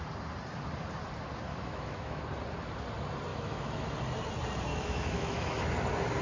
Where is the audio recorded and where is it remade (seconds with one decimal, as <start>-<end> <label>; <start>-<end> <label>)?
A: 0.0-1.5 recorded; 1.5-2.2 remade; 2.2-3.3 recorded; 3.3-3.9 remade; 3.9-4.7 recorded; 4.7-5.7 remade; 5.7-6.2 recorded